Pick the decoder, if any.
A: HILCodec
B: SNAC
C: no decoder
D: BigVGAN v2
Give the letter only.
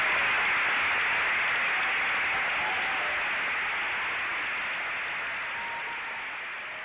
C